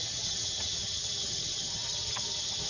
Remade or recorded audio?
remade